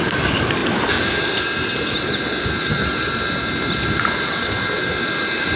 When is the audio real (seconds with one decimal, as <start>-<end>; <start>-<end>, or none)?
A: 0.0-5.6